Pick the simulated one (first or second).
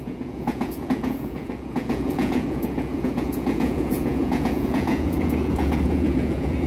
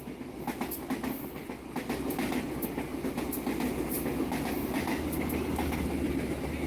first